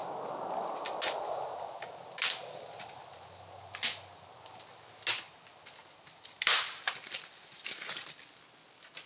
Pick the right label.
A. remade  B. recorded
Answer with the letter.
B